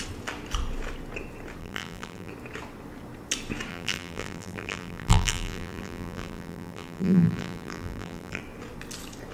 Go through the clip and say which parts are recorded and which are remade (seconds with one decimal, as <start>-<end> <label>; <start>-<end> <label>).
0.0-1.6 recorded; 1.6-2.3 remade; 2.3-3.7 recorded; 3.7-8.4 remade; 8.4-9.3 recorded